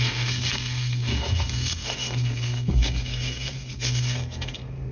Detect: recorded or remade remade